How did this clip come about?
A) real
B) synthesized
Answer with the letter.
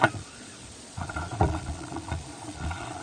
B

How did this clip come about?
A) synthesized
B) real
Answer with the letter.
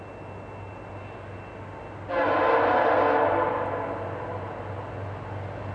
B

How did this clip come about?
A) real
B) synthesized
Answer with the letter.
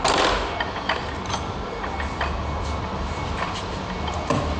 A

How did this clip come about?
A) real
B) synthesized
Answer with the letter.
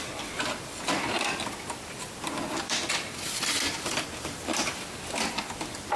B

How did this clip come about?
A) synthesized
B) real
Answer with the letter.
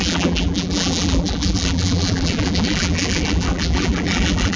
A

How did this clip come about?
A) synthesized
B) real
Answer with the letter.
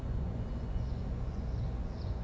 A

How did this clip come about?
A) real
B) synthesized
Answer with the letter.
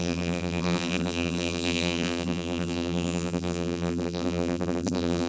B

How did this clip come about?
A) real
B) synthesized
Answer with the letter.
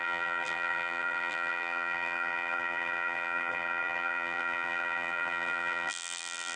B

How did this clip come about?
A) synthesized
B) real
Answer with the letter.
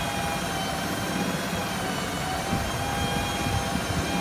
B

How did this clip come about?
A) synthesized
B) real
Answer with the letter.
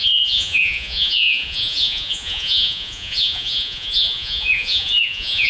A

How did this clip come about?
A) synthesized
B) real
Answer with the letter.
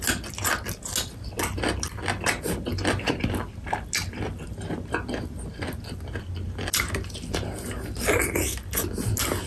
B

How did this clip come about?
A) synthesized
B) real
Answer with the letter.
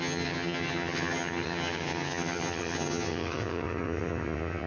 A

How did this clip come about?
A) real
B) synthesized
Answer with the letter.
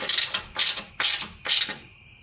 B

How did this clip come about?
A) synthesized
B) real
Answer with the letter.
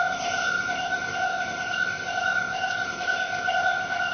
A